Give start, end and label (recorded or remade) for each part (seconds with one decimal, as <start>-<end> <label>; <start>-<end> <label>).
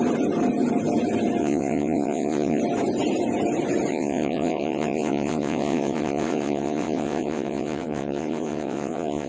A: 0.0-1.4 recorded; 1.4-2.6 remade; 2.6-3.9 recorded; 3.9-9.3 remade